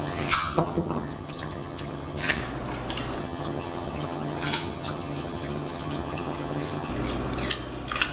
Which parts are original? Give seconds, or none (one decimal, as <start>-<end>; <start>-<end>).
2.4-3.2; 6.9-8.1